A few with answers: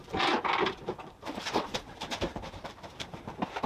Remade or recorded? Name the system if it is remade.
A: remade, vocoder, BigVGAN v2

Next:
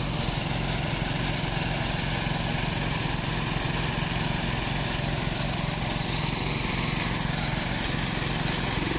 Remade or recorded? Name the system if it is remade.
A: recorded